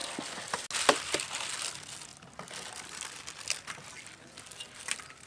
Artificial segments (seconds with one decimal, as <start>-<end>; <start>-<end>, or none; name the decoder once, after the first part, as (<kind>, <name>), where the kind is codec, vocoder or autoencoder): none